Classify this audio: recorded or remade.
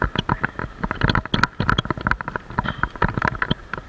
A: recorded